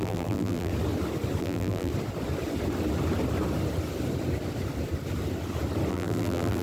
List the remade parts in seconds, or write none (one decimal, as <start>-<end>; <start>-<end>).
0.0-0.7; 1.4-1.9; 5.9-6.6